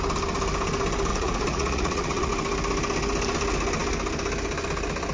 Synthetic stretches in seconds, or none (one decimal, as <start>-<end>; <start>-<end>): 1.1-2.3